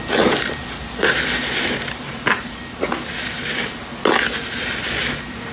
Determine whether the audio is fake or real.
real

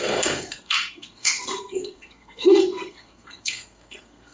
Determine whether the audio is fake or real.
fake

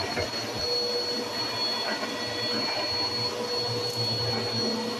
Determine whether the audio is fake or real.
real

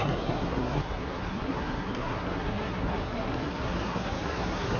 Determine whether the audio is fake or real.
fake